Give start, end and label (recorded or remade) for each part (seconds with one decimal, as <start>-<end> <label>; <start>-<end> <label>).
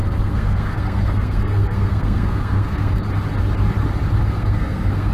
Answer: 0.0-3.1 remade; 3.1-4.2 recorded; 4.2-5.1 remade